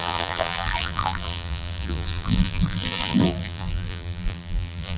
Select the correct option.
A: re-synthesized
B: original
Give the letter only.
A